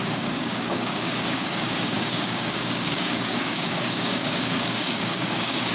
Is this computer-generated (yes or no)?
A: yes